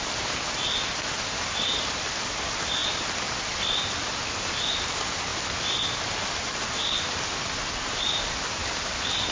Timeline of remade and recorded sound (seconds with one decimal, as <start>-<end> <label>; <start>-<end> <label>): 0.0-2.8 recorded; 2.8-4.5 remade; 4.5-5.3 recorded; 5.3-6.3 remade; 6.3-8.6 recorded; 8.6-9.3 remade